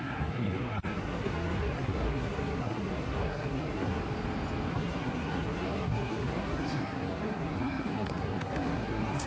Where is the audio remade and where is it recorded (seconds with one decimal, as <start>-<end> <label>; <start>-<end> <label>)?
0.0-4.0 remade; 4.0-4.7 recorded; 4.7-9.3 remade